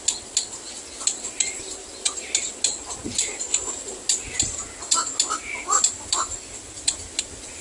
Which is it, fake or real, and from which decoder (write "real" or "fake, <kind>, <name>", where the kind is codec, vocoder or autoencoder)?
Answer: real